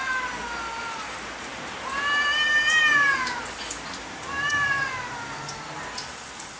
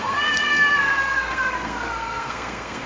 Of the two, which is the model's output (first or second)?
second